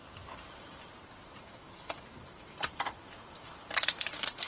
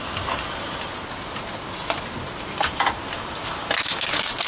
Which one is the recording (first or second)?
second